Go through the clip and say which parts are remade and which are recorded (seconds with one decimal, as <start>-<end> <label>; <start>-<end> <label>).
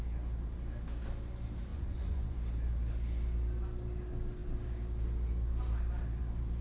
0.0-1.7 recorded; 1.7-2.4 remade; 2.4-6.6 recorded